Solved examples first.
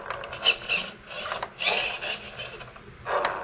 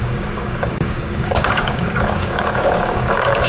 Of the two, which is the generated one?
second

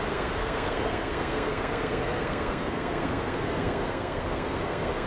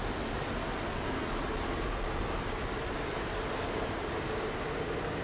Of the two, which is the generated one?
first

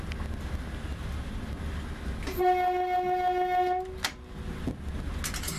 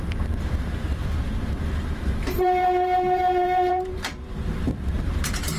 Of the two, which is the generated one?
second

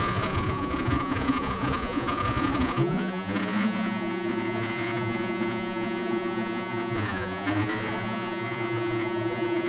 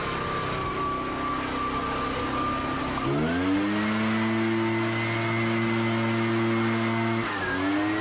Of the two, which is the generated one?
first